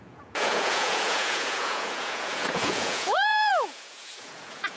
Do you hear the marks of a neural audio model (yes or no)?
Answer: yes